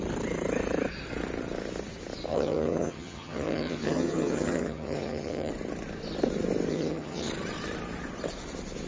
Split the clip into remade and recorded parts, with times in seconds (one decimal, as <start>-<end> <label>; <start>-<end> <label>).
0.0-2.3 recorded; 2.3-5.5 remade; 5.5-6.7 recorded; 6.7-7.3 remade; 7.3-8.9 recorded